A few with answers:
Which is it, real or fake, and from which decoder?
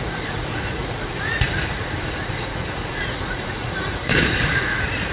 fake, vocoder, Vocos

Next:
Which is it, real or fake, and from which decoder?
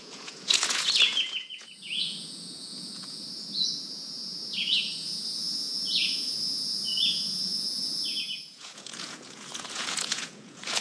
fake, vocoder, Vocos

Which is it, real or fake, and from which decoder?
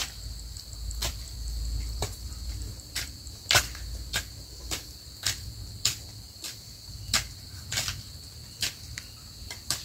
fake, vocoder, BigVGAN v2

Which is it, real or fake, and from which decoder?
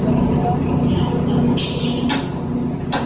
real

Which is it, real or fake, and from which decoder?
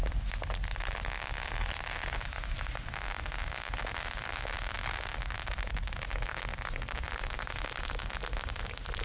real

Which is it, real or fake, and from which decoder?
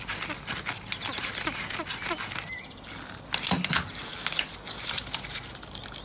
real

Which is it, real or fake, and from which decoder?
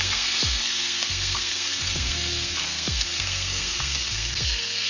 fake, codec, SNAC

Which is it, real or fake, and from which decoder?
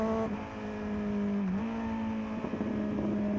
real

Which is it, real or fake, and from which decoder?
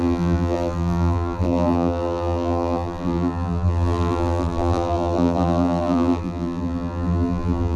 fake, vocoder, BigVGAN v2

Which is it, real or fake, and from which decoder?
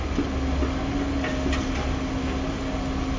real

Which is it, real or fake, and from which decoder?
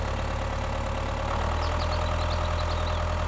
real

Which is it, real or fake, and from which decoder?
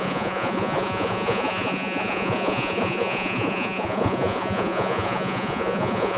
fake, vocoder, Vocos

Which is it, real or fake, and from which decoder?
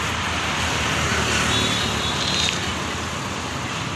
real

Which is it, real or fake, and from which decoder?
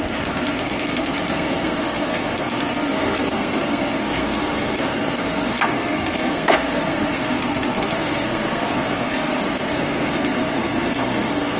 fake, codec, SNAC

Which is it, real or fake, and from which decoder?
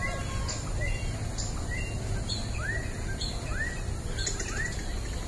real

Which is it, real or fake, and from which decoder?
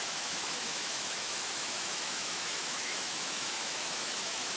fake, autoencoder, DAC-VAE